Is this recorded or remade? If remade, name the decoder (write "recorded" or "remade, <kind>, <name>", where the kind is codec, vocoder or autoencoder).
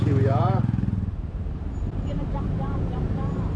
remade, vocoder, BigVGAN v2